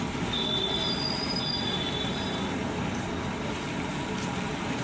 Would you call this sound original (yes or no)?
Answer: yes